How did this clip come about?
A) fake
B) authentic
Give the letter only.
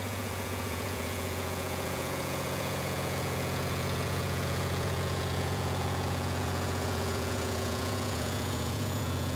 A